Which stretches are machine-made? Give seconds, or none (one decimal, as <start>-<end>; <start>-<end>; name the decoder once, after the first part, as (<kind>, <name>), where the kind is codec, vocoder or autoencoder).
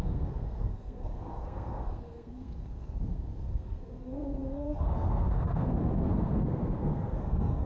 0.0-7.7 (codec, SNAC)